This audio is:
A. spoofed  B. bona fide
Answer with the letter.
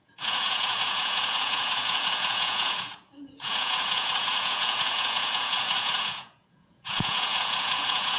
A